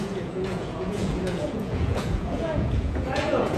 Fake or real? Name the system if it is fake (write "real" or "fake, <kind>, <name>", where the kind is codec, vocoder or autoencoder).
fake, vocoder, Vocos